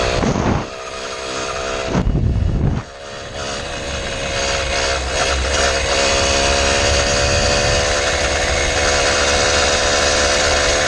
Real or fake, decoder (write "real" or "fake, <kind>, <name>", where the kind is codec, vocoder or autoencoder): real